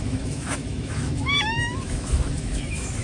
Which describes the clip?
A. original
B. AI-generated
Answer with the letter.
B